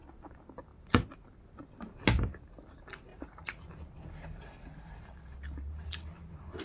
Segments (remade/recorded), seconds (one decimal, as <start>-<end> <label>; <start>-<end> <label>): 0.0-3.1 recorded; 3.1-3.6 remade; 3.6-6.6 recorded